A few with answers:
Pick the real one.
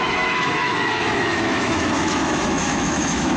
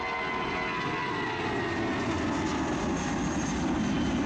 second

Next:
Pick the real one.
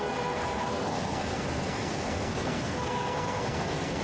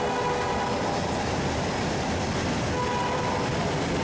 second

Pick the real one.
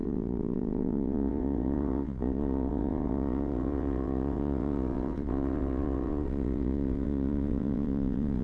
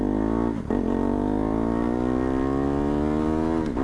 second